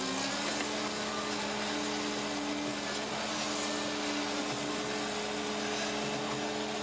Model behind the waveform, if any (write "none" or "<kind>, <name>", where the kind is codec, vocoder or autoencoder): none